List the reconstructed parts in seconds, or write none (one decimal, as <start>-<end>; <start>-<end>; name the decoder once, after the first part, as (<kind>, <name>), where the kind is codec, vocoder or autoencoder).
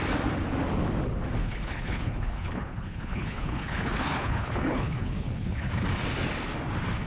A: 1.4-5.7 (codec, HILCodec)